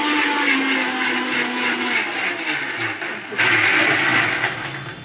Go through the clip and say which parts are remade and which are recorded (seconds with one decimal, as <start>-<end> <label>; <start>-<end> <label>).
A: 0.0-5.0 recorded